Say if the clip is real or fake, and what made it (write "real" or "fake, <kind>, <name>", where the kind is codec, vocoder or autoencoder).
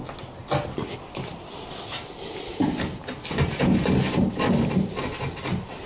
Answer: real